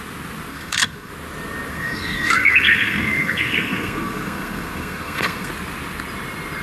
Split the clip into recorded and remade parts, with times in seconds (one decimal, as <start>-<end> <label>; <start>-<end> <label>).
0.0-0.5 recorded; 0.5-1.1 remade; 1.1-1.7 recorded; 1.7-5.5 remade; 5.5-6.6 recorded